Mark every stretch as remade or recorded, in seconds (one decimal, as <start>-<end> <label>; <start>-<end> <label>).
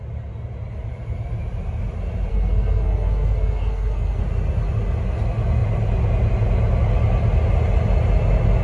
0.0-2.3 recorded; 2.3-4.2 remade; 4.2-8.6 recorded